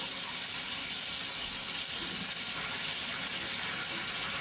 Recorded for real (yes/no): yes